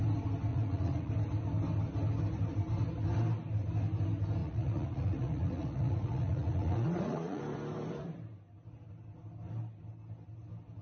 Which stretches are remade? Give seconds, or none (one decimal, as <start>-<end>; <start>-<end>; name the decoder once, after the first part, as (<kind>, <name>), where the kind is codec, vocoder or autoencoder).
0.5-1.1 (vocoder, Vocos); 4.4-7.4